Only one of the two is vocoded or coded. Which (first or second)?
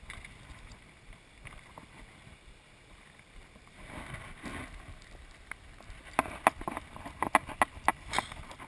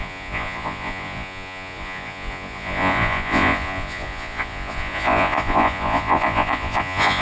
second